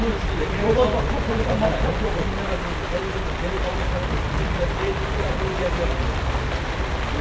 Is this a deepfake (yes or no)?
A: yes